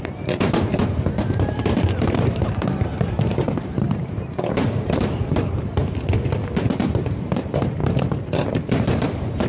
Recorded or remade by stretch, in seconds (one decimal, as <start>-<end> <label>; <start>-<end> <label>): 0.0-5.8 remade; 5.8-6.7 recorded; 6.7-9.5 remade